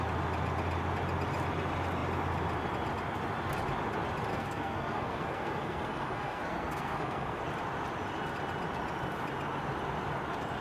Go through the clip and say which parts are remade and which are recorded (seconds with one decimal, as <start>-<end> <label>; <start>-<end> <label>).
0.0-4.3 recorded; 4.3-7.4 remade; 7.4-10.6 recorded